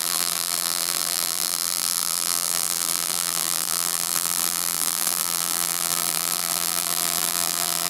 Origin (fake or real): fake